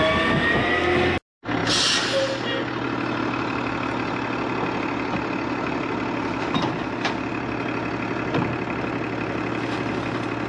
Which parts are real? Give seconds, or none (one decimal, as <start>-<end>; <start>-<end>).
0.0-10.5